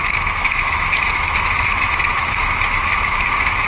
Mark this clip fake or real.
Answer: fake